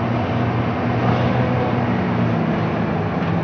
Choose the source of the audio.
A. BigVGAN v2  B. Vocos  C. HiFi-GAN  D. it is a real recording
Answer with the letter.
D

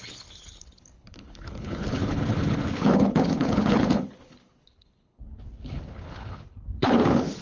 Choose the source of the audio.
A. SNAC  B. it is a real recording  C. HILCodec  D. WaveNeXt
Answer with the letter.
C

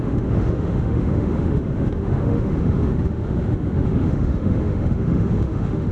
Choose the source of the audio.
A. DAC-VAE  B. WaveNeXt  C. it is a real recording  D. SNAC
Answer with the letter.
A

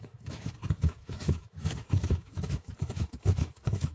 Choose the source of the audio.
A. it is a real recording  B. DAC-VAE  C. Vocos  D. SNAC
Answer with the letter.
B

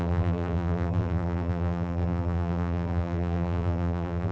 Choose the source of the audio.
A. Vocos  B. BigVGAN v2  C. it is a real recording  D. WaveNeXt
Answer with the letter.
B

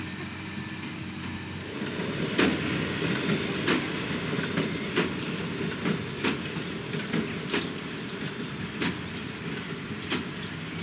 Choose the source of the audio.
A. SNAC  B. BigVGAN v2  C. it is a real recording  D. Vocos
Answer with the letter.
C